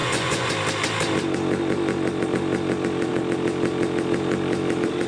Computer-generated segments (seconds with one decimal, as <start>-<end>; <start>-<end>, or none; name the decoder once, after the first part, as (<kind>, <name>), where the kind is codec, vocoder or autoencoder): 0.0-0.5 (vocoder, Vocos)